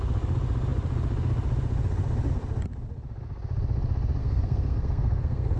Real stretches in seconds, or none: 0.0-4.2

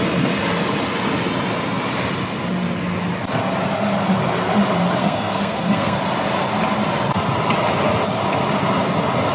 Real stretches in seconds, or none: 0.0-5.0; 6.0-9.3

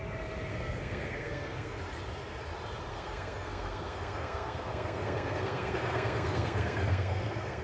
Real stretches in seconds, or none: 0.0-0.5; 1.8-2.9